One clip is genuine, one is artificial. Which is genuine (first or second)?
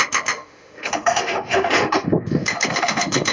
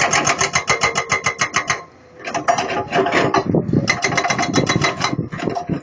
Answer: second